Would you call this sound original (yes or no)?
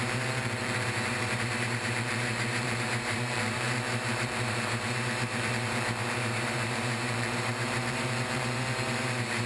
no